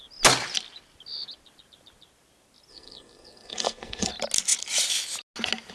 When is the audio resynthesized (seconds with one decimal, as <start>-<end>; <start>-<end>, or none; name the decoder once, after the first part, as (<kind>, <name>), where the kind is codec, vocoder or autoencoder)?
2.7-4.1 (codec, SNAC)